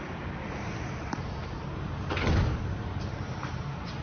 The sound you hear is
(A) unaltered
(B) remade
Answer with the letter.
B